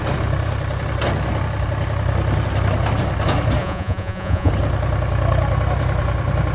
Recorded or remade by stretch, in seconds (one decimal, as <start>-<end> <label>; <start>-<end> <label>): 0.0-3.6 recorded; 3.6-4.5 remade; 4.5-6.5 recorded